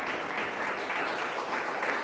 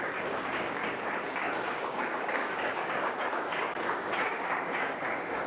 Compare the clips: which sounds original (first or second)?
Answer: first